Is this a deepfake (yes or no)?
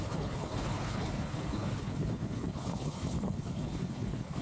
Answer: yes